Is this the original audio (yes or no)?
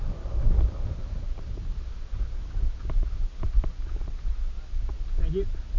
yes